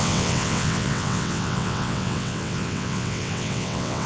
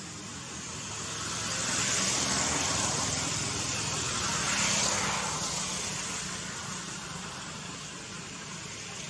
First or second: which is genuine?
second